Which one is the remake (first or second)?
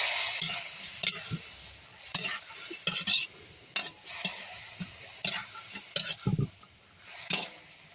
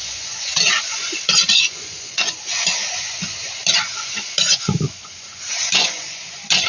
second